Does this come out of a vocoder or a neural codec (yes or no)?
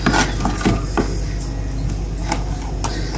no